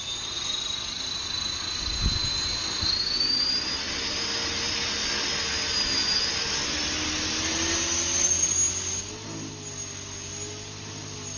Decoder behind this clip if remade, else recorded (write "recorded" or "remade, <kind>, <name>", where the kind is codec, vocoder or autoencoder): recorded